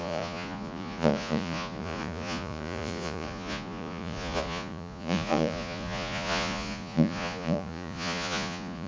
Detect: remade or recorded remade